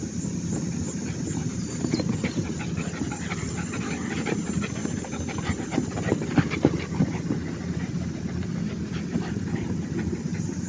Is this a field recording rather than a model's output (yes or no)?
yes